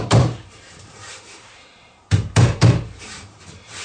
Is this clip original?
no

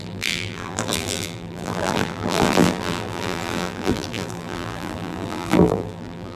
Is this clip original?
no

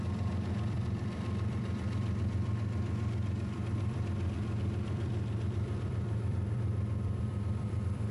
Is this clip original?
no